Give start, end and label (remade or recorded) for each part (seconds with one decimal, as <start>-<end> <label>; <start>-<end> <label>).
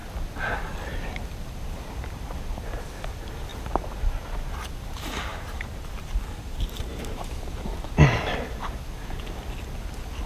0.0-5.3 recorded; 5.3-7.9 remade; 7.9-10.3 recorded